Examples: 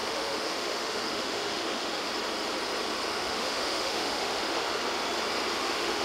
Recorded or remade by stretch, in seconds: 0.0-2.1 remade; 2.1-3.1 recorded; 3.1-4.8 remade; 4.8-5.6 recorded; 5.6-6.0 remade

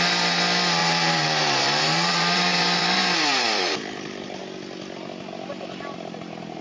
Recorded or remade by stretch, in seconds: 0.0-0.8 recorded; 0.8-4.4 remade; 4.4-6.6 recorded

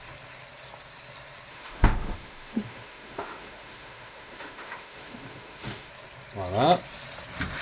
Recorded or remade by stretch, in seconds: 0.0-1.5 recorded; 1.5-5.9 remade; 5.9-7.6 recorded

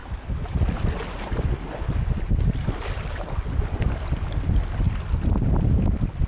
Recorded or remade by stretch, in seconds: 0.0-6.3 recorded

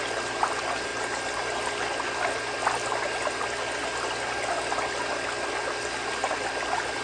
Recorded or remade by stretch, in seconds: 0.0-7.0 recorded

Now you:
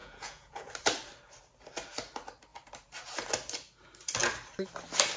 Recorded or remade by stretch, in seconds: 0.0-0.7 remade; 0.7-5.2 recorded